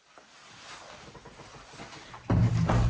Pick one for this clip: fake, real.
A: real